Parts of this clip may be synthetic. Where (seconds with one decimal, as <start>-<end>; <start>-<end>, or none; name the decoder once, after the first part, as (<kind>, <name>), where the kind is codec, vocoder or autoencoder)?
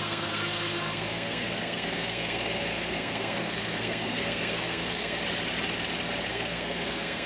0.0-5.2 (codec, SNAC); 6.3-7.3